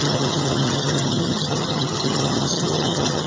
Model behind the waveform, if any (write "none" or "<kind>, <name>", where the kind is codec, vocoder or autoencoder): vocoder, HiFi-GAN